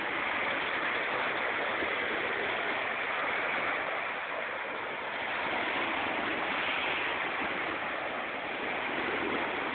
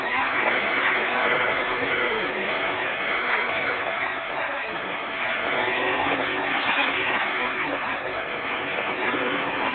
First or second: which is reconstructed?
second